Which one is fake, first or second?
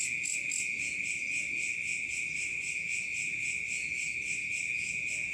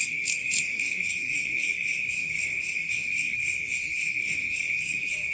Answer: second